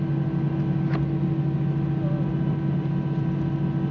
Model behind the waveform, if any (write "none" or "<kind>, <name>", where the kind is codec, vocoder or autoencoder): none